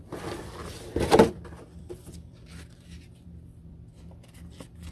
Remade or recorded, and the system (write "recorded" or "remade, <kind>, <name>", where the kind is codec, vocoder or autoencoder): remade, vocoder, BigVGAN v2